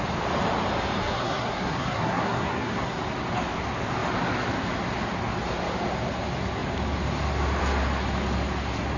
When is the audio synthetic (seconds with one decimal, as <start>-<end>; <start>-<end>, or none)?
1.0-3.0

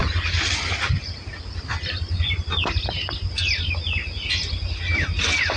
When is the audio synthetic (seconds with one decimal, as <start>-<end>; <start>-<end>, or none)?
none

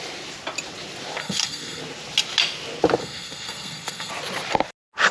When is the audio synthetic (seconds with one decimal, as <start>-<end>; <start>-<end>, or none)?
1.2-1.8; 3.0-4.1